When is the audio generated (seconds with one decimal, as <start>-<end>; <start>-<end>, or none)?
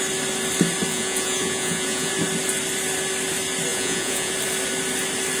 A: 0.9-2.1; 3.7-4.3